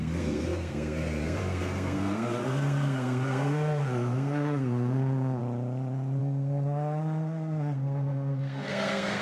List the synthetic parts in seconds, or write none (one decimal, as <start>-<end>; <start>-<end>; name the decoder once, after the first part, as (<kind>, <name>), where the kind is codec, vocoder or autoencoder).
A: 0.0-5.4 (codec, SNAC); 6.2-9.2